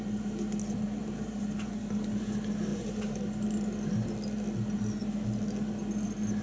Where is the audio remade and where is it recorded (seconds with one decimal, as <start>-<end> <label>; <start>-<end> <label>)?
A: 0.0-1.0 recorded; 1.0-1.7 remade; 1.7-2.7 recorded; 2.7-3.2 remade; 3.2-6.4 recorded